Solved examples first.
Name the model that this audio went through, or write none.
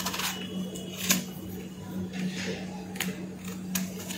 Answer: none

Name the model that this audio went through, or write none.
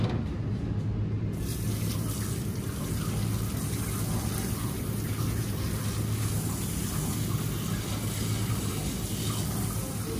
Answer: none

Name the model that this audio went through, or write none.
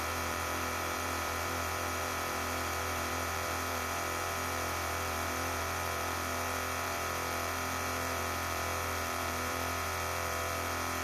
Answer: vocoder, BigVGAN v2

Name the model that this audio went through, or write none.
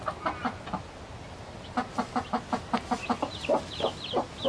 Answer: none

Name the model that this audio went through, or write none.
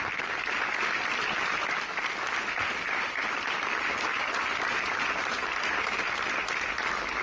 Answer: none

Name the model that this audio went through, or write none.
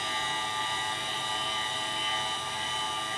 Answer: none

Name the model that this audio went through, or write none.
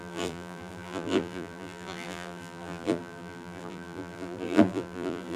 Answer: vocoder, BigVGAN v2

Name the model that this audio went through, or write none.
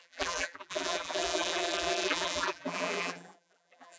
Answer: vocoder, BigVGAN v2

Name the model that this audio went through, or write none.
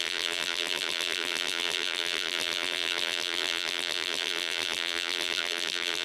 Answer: vocoder, BigVGAN v2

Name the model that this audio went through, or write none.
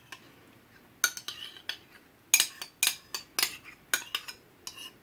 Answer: none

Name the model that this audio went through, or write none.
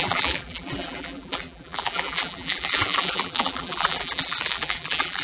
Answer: vocoder, BigVGAN v2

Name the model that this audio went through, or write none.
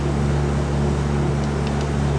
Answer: none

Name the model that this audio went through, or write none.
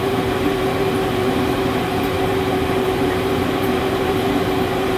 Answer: vocoder, BigVGAN v2